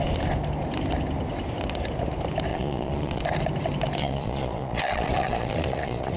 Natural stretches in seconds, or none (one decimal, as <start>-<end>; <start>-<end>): 0.0-2.5; 3.2-4.0